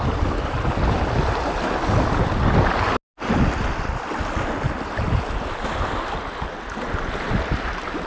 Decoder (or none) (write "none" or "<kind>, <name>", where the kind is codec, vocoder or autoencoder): none